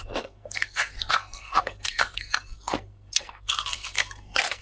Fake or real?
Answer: fake